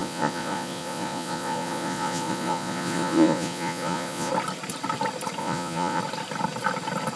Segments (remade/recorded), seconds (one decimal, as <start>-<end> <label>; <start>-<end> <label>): 0.0-4.3 remade; 4.3-5.4 recorded; 5.4-6.0 remade; 6.0-7.2 recorded